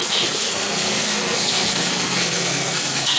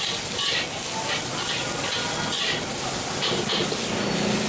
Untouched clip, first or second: second